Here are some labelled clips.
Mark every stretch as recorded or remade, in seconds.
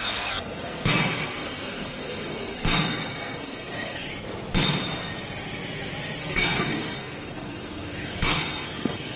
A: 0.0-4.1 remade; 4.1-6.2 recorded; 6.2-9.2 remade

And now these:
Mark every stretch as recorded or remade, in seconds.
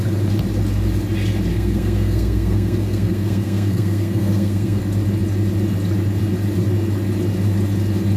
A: 0.0-1.5 recorded; 1.5-4.8 remade; 4.8-8.2 recorded